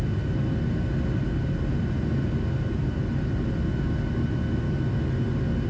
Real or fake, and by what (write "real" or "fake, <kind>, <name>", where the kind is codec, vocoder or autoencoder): real